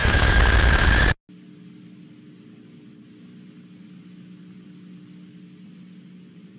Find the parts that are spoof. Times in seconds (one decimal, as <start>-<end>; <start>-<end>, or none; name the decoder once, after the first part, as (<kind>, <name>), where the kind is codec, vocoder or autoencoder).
0.0-0.8 (autoencoder, DAC-VAE)